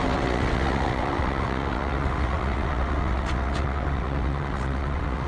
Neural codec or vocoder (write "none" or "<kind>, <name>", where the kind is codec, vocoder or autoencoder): vocoder, WaveNeXt